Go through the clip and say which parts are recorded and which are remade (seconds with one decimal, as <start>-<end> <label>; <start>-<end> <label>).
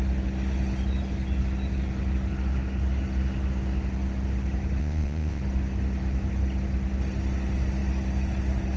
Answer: 0.0-4.8 recorded; 4.8-5.4 remade; 5.4-8.8 recorded